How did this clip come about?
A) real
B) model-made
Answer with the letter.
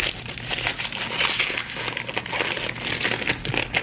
A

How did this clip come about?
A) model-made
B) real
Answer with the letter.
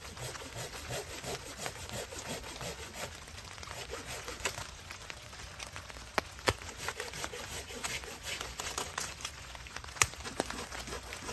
A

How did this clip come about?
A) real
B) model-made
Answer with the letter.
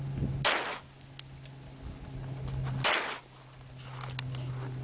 A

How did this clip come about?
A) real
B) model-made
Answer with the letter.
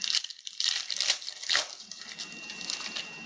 B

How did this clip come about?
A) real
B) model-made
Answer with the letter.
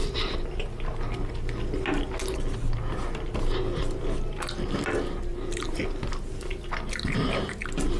A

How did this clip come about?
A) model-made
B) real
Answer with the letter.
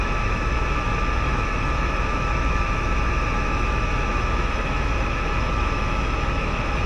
A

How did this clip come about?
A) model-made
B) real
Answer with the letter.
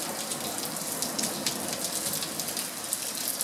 B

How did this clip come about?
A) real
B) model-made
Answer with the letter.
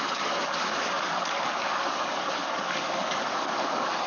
B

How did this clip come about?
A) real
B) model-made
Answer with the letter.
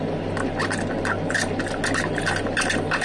A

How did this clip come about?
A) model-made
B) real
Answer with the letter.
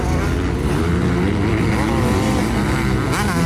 B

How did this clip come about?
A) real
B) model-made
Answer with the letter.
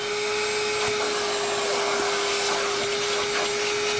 A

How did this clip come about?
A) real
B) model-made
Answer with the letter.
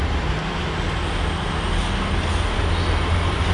A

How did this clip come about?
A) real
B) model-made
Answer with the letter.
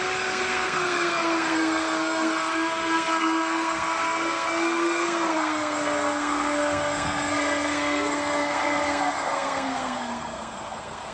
B